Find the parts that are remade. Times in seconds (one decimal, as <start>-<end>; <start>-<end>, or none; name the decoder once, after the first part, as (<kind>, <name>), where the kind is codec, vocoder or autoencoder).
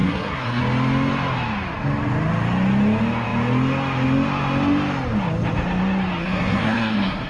0.0-0.6 (codec, SNAC); 6.2-7.3